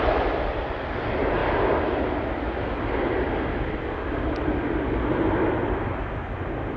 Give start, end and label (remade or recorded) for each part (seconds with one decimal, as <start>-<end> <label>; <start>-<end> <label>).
0.0-1.4 remade; 1.4-5.5 recorded; 5.5-6.0 remade; 6.0-6.8 recorded